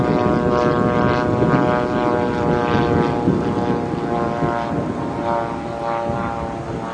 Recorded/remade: recorded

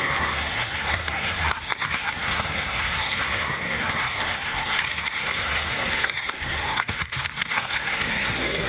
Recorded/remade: remade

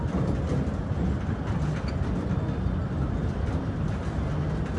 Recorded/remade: recorded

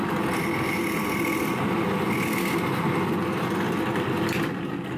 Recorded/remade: recorded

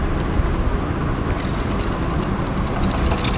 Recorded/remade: recorded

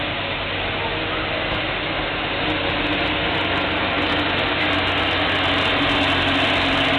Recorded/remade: recorded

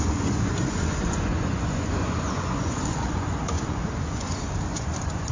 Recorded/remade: remade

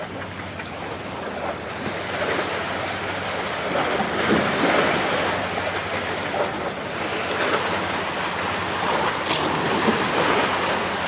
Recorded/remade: recorded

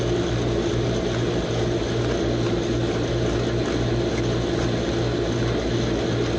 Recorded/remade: recorded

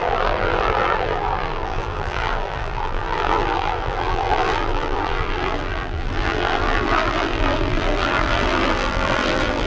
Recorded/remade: remade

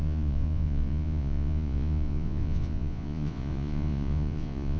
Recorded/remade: remade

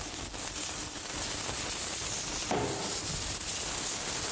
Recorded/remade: recorded